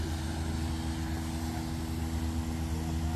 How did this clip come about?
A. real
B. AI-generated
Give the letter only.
A